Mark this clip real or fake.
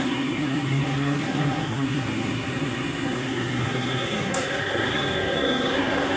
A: fake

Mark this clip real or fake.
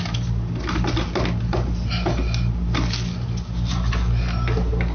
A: real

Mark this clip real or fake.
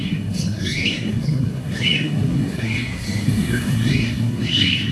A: fake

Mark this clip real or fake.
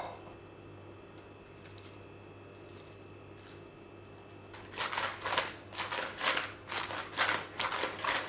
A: real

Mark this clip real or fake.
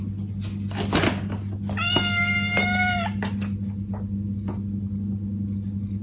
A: real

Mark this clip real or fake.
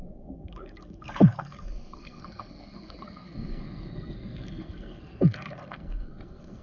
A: fake